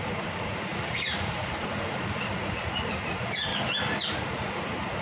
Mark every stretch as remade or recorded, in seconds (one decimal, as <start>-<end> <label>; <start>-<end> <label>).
0.0-3.5 remade; 3.5-4.0 recorded; 4.0-5.0 remade